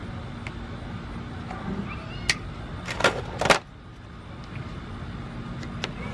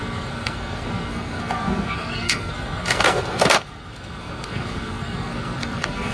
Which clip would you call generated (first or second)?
second